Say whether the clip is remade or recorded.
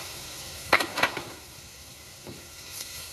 remade